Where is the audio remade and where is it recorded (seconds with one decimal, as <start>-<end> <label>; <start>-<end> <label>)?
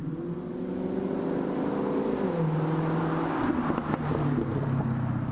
0.0-4.5 recorded; 4.5-5.3 remade